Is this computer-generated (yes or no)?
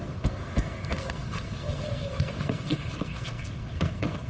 yes